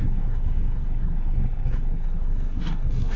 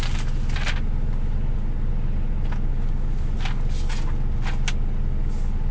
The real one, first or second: second